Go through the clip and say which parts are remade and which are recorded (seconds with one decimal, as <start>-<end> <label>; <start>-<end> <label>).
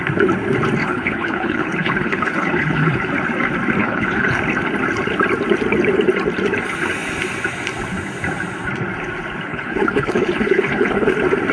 0.0-0.8 recorded; 0.8-3.1 remade; 3.1-3.8 recorded; 3.8-4.4 remade; 4.4-9.5 recorded; 9.5-11.1 remade; 11.1-11.5 recorded